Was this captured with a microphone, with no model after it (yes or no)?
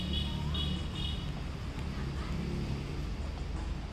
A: yes